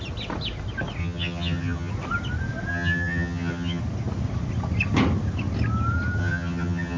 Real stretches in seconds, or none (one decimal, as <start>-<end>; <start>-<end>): 0.0-1.0; 1.9-2.7; 3.8-6.2

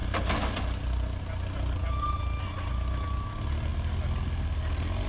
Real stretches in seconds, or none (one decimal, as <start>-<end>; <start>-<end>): 0.0-5.1

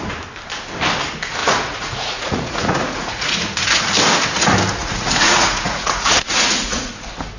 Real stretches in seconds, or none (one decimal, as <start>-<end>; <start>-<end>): 0.0-1.4; 3.8-4.8; 6.9-7.4

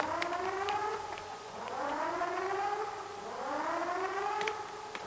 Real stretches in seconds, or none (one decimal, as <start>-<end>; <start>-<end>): 0.0-0.8; 2.6-5.1

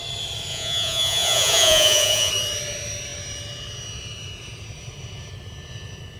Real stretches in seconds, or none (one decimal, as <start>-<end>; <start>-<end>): 0.0-0.5; 2.3-6.2